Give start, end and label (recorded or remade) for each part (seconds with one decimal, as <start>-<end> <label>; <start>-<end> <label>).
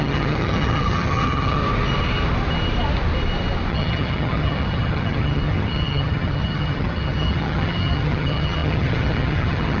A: 0.0-1.6 remade; 1.6-3.7 recorded; 3.7-9.8 remade